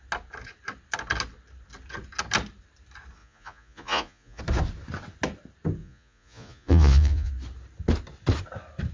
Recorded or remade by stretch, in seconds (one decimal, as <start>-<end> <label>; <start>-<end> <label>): 0.0-3.2 recorded; 3.2-4.4 remade; 4.4-5.8 recorded; 5.8-7.3 remade; 7.3-8.9 recorded